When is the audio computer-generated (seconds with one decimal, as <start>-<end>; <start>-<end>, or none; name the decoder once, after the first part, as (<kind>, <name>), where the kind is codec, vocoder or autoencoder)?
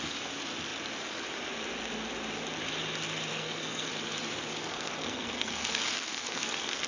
3.3-3.9 (codec, SNAC); 4.6-6.9